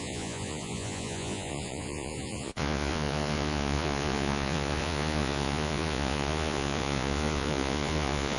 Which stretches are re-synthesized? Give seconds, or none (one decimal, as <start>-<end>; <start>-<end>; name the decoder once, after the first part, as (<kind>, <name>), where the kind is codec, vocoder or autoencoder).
0.0-8.4 (vocoder, Vocos)